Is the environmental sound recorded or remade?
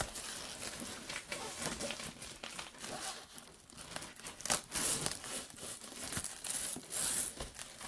recorded